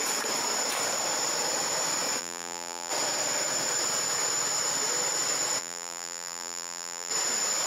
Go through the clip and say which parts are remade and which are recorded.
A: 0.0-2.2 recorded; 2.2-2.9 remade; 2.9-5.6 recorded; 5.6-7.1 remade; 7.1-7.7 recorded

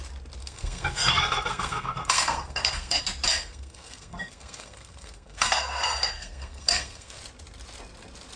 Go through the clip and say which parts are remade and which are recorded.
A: 0.0-0.4 recorded; 0.4-3.0 remade; 3.0-3.5 recorded; 3.5-7.2 remade; 7.2-8.4 recorded

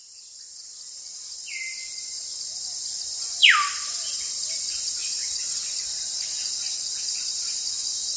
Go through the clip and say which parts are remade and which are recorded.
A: 0.0-5.0 recorded; 5.0-6.5 remade; 6.5-8.2 recorded

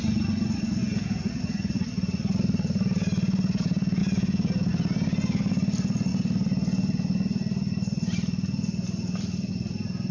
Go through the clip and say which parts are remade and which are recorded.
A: 0.0-0.8 recorded; 0.8-1.4 remade; 1.4-4.0 recorded; 4.0-4.7 remade; 4.7-10.1 recorded

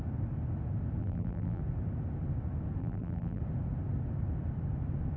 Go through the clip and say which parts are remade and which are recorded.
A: 0.0-1.0 recorded; 1.0-1.6 remade; 1.6-2.8 recorded; 2.8-3.4 remade; 3.4-5.2 recorded

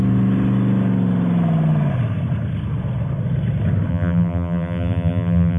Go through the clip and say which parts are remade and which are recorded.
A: 0.0-3.9 recorded; 3.9-5.6 remade

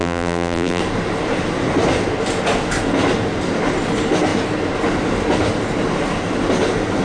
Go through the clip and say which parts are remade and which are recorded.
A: 0.0-0.8 remade; 0.8-7.0 recorded